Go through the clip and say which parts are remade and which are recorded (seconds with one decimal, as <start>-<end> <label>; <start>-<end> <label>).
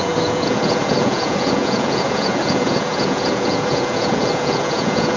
0.0-5.2 remade